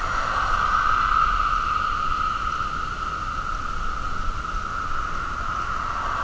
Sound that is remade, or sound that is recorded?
recorded